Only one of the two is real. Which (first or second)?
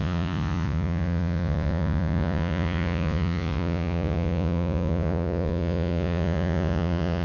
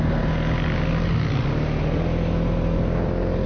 second